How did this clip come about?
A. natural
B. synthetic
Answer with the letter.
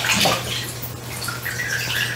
A